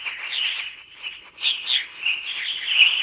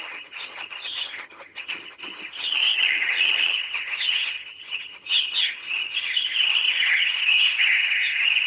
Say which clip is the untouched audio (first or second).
first